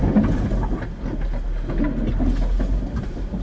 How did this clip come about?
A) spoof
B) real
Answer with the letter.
B